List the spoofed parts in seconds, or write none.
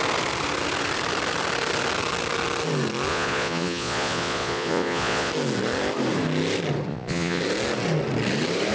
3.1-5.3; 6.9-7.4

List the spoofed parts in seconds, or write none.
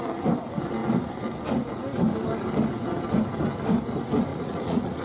4.3-5.0